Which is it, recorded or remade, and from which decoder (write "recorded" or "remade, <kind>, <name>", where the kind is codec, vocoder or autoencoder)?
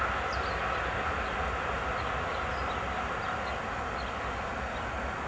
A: recorded